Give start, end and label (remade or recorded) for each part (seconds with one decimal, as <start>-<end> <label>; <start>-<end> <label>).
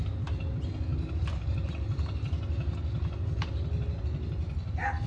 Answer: 0.0-5.1 recorded